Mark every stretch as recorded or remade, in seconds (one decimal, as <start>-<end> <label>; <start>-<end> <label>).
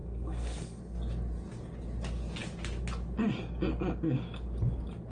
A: 0.0-0.8 remade; 0.8-5.1 recorded